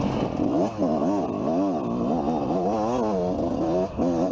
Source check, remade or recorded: recorded